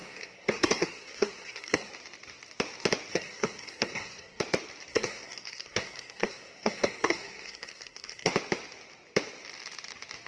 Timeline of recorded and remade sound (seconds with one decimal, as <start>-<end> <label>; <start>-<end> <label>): 0.0-1.9 remade; 1.9-3.1 recorded; 3.1-4.4 remade; 4.4-4.9 recorded; 4.9-8.3 remade; 8.3-10.3 recorded